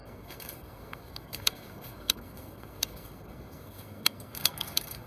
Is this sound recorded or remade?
remade